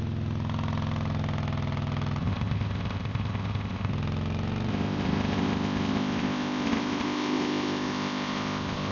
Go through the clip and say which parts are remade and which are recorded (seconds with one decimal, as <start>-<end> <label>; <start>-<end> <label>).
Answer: 0.0-2.2 recorded; 2.2-3.9 remade; 3.9-4.7 recorded; 4.7-8.9 remade

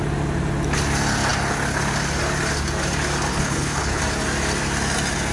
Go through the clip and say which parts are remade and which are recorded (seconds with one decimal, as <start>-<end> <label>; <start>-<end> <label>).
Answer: 0.0-3.3 recorded; 3.3-4.0 remade; 4.0-5.3 recorded

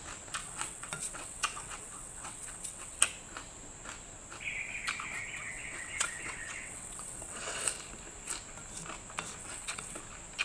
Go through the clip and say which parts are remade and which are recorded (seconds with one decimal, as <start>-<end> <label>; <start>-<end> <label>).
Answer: 0.0-0.4 recorded; 0.4-3.0 remade; 3.0-5.4 recorded; 5.4-7.6 remade; 7.6-9.4 recorded; 9.4-10.0 remade; 10.0-10.4 recorded

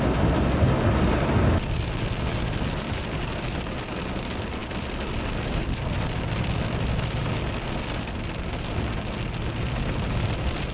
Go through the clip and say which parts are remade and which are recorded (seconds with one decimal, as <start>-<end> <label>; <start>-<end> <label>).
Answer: 0.0-10.7 recorded